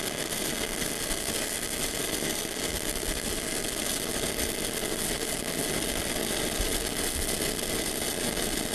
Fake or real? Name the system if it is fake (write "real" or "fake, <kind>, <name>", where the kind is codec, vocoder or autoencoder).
real